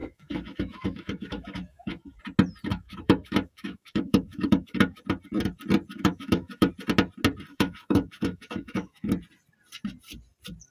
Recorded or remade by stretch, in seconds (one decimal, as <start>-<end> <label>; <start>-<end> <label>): 0.0-2.2 remade; 2.2-2.7 recorded; 2.7-5.0 remade; 5.0-5.9 recorded; 5.9-6.7 remade; 6.7-7.5 recorded; 7.5-9.1 remade; 9.1-10.7 recorded

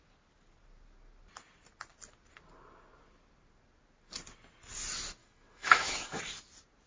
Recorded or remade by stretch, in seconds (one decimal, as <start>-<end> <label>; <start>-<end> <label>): 0.0-5.2 recorded; 5.2-6.2 remade; 6.2-6.9 recorded